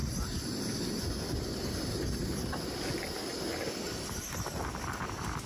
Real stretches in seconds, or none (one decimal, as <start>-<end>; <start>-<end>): 0.0-5.5